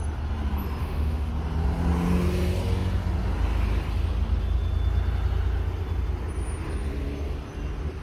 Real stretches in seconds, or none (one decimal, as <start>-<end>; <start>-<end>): 0.0-0.8; 1.3-8.0